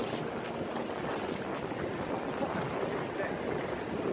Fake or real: real